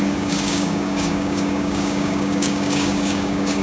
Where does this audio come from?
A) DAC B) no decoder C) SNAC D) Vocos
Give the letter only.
A